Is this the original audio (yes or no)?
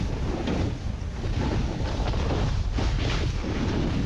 yes